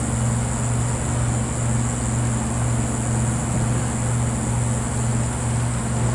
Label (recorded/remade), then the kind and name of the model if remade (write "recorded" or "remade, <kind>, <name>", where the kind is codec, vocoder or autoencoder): recorded